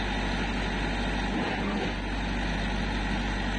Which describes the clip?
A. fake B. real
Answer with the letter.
B